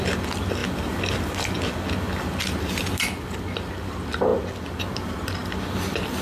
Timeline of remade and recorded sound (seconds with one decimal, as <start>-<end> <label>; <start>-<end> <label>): 0.0-6.2 recorded